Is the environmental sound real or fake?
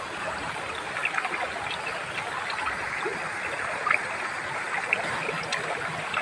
real